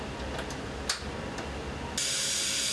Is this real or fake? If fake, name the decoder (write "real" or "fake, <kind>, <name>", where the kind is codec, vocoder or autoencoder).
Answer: real